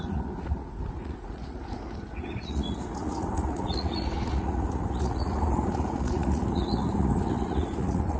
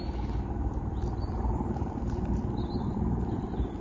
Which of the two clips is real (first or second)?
second